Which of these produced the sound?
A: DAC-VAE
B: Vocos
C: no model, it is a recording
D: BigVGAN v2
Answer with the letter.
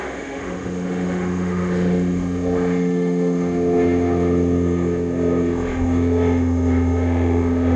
A